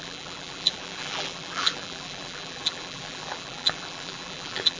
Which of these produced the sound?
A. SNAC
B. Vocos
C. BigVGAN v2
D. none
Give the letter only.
C